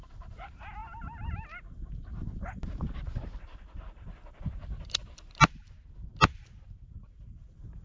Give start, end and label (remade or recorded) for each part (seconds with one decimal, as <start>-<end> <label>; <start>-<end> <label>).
0.0-7.8 recorded